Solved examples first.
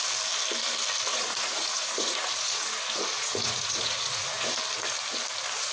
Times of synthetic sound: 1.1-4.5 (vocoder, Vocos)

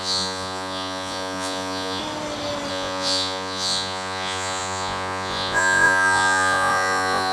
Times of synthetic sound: 0.0-2.0 (vocoder, Vocos); 2.7-7.3

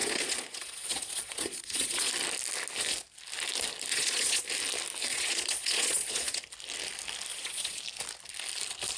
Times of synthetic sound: 0.0-2.1 (vocoder, Vocos); 3.9-4.4; 5.1-6.4; 7.3-7.8

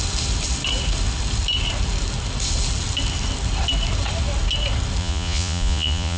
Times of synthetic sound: 5.0-6.2 (vocoder, Vocos)